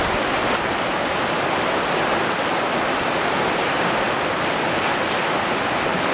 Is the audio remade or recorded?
recorded